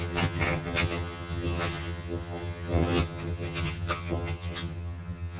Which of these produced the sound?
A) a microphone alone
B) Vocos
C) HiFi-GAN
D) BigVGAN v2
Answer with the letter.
C